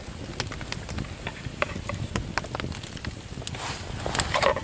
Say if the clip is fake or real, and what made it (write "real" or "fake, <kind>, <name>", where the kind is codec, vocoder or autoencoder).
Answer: real